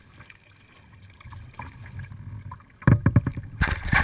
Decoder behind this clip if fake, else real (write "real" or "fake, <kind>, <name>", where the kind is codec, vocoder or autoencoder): real